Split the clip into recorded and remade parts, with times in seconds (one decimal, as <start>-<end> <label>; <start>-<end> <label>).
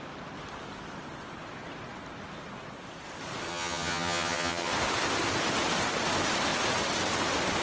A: 0.0-3.5 recorded; 3.5-4.7 remade; 4.7-7.6 recorded